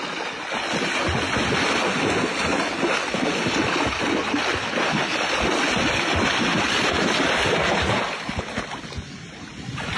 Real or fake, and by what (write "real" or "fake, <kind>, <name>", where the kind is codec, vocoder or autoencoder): real